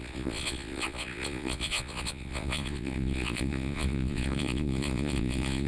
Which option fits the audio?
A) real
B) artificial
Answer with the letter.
B